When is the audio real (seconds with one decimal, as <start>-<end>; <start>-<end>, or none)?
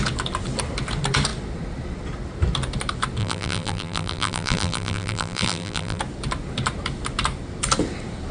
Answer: 0.0-3.2; 6.0-8.3